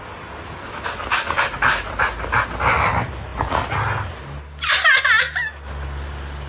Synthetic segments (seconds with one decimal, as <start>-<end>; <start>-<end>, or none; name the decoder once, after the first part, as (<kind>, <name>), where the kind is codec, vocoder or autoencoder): none